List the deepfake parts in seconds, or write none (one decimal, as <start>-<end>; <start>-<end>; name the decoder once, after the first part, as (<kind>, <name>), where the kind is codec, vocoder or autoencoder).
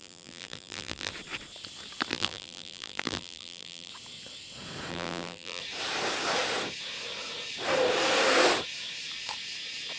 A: 0.0-1.1 (vocoder, BigVGAN v2); 2.1-3.9; 4.9-5.6